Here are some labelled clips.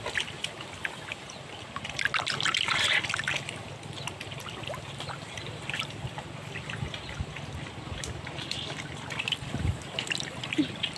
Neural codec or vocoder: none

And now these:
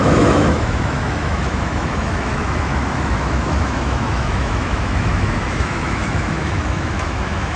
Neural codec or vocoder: autoencoder, DAC-VAE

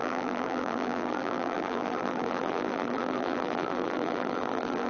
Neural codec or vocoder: vocoder, BigVGAN v2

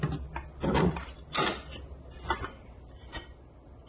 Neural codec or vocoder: none